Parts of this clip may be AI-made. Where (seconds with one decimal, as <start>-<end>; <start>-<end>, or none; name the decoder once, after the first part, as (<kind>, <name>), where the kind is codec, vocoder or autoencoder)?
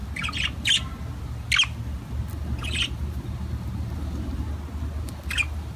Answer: none